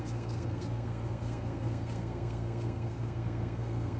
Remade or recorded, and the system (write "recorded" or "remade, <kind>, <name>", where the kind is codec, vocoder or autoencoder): remade, codec, SNAC